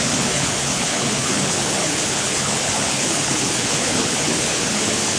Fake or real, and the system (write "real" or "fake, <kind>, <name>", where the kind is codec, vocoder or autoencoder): fake, codec, HILCodec